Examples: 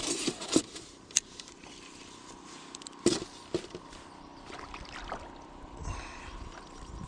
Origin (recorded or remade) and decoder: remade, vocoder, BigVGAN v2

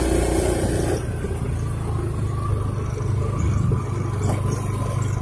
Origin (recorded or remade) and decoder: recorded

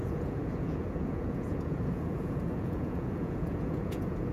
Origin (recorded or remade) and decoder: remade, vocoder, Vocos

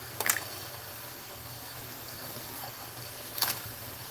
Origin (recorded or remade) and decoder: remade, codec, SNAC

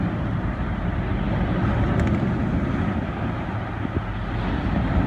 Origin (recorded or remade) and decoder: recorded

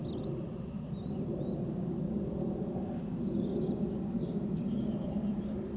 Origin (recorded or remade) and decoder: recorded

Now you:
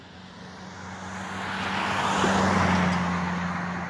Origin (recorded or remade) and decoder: recorded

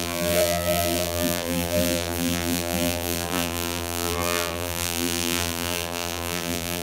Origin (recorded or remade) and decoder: remade, vocoder, BigVGAN v2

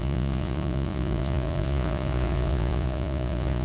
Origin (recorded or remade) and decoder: remade, vocoder, Vocos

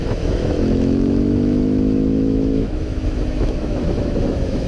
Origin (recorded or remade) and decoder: remade, autoencoder, DAC-VAE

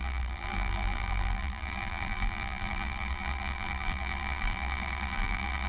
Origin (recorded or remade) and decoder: remade, vocoder, BigVGAN v2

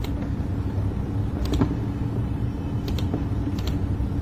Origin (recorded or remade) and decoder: recorded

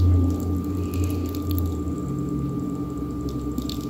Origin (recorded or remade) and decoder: recorded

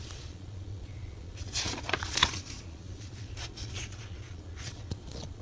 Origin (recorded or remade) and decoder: remade, vocoder, Vocos